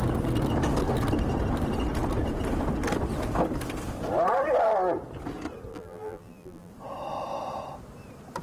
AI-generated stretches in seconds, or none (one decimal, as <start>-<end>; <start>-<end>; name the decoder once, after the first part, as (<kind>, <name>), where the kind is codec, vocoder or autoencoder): 5.7-6.7 (vocoder, BigVGAN v2)